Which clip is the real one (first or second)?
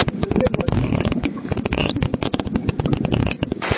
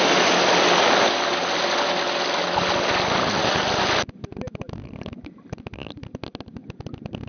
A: second